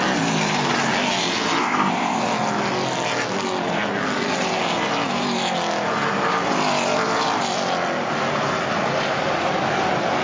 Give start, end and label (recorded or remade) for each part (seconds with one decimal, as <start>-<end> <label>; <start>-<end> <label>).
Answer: 0.0-1.6 recorded; 1.6-2.2 remade; 2.2-10.2 recorded